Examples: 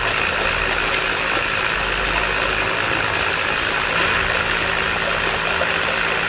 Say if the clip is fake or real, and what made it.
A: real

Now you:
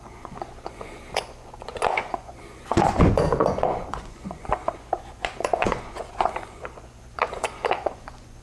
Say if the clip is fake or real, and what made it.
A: fake, vocoder, Vocos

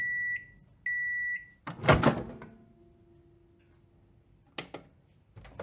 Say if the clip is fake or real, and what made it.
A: real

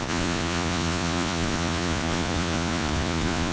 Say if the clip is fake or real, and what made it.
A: fake, vocoder, Vocos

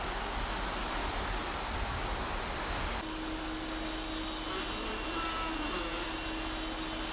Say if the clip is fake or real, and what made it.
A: real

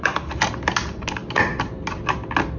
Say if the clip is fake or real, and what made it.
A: real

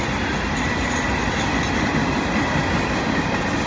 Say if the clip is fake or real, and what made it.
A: real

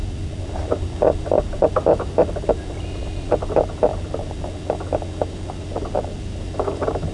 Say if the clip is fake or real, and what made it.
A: real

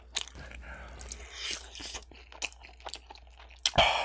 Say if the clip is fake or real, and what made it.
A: real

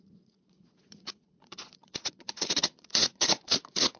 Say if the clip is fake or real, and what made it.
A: fake, vocoder, Vocos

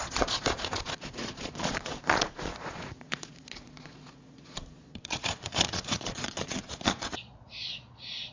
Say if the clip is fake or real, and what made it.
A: fake, vocoder, Vocos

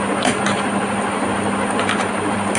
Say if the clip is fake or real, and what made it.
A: real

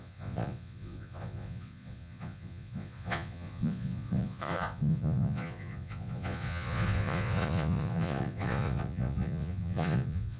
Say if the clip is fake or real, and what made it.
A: fake, vocoder, Vocos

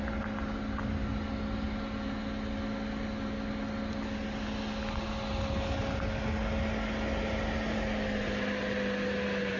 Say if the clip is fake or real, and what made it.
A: real